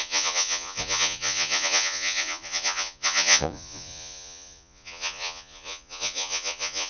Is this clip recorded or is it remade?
remade